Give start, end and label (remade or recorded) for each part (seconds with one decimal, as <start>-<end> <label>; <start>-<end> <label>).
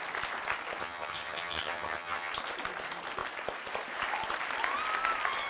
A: 0.0-0.8 recorded; 0.8-2.3 remade; 2.3-5.5 recorded